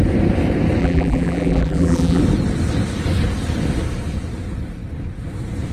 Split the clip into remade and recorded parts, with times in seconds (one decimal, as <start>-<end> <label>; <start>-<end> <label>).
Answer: 0.0-0.8 recorded; 0.8-2.2 remade; 2.2-5.7 recorded